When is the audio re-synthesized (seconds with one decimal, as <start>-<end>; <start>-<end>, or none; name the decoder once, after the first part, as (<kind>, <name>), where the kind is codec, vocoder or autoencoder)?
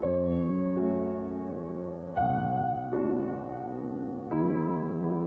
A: 0.0-0.5 (vocoder, Vocos); 1.5-5.3